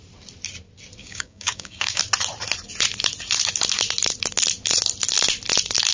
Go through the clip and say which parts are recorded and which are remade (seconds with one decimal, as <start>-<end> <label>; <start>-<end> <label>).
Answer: 0.0-1.0 recorded; 1.0-2.0 remade; 2.0-5.9 recorded